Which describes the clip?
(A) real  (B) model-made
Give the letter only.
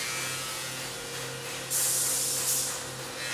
A